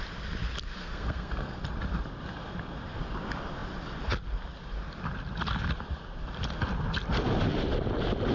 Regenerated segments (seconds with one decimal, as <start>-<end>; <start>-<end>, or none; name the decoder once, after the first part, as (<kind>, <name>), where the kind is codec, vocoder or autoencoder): 0.8-1.6 (codec, SNAC)